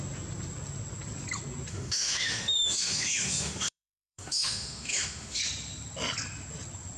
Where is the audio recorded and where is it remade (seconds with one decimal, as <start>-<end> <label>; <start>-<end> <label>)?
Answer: 0.0-1.7 recorded; 1.7-5.4 remade; 5.4-7.0 recorded